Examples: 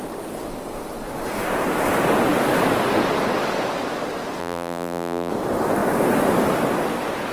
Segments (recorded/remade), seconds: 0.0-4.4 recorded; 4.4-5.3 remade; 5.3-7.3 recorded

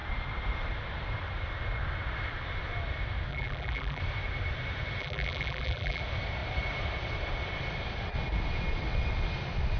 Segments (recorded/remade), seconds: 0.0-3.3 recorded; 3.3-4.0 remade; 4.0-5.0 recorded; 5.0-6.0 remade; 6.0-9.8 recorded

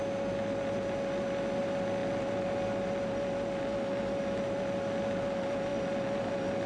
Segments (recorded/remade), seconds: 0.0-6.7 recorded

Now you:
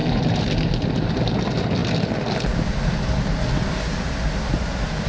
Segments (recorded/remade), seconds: 0.0-0.7 remade; 0.7-5.1 recorded

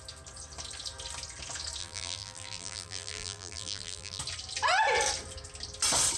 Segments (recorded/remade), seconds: 0.0-1.8 recorded; 1.8-4.2 remade; 4.2-6.2 recorded

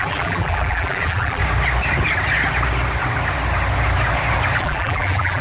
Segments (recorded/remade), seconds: 0.0-1.4 remade; 1.4-4.6 recorded; 4.6-5.4 remade